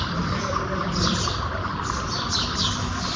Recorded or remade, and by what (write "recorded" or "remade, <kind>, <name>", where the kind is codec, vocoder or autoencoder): remade, vocoder, BigVGAN v2